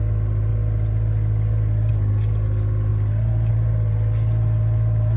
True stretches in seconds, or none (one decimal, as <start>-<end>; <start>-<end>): 0.0-0.5; 1.9-2.9; 3.5-5.2